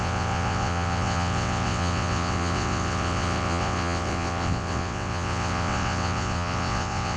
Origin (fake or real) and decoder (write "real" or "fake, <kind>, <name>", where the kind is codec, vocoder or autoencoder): fake, vocoder, WaveNeXt